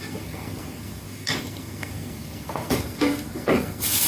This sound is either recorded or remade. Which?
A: remade